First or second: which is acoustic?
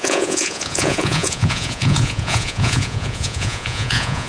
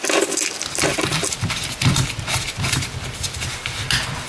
second